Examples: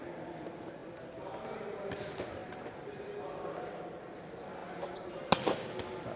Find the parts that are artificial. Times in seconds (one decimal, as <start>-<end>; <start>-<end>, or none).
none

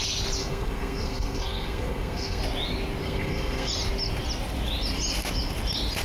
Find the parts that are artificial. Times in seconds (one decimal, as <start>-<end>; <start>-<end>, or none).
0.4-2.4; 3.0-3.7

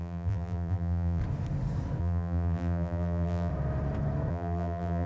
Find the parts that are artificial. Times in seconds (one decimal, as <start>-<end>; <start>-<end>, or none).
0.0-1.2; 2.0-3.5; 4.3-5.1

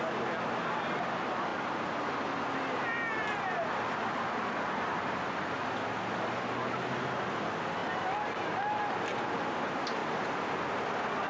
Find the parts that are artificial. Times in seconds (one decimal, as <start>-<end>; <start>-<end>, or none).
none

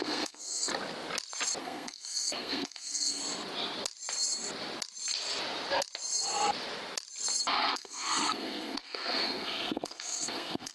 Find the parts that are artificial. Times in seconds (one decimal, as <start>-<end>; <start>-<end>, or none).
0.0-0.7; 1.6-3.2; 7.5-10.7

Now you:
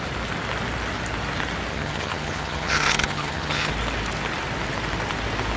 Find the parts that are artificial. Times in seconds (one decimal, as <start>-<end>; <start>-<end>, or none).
1.7-3.7

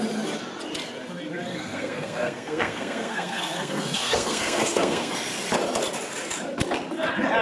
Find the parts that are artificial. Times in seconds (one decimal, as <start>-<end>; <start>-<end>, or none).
1.5-5.1